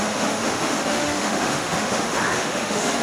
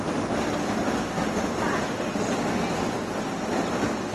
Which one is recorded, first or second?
second